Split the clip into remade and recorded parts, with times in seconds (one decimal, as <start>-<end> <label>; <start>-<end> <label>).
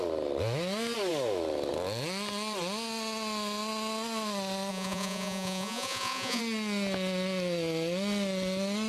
0.0-4.7 recorded; 4.7-6.4 remade; 6.4-8.9 recorded